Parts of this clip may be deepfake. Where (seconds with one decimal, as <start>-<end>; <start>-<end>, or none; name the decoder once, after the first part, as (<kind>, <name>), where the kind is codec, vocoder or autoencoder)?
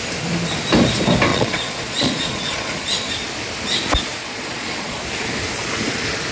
1.3-3.1 (vocoder, Vocos); 4.2-5.0